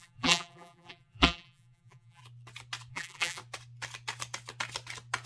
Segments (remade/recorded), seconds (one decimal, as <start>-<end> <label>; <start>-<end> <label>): 0.0-2.2 remade; 2.2-2.9 recorded; 2.9-3.4 remade; 3.4-5.3 recorded